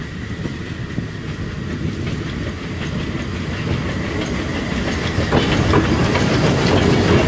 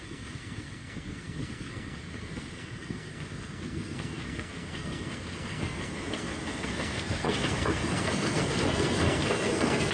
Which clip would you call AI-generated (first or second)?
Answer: second